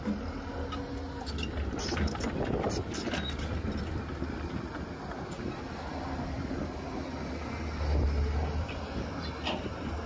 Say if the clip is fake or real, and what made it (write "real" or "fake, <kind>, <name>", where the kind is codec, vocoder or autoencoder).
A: real